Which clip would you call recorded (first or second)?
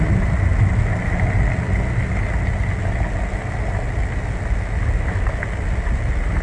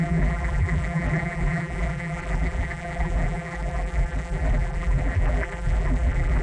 first